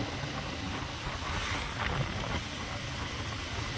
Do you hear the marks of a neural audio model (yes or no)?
no